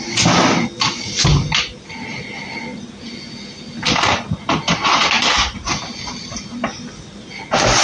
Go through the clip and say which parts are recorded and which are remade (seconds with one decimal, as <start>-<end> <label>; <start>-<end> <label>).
0.0-7.8 recorded